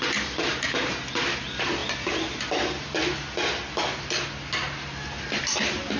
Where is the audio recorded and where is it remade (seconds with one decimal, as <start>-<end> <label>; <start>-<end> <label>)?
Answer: 0.0-6.0 recorded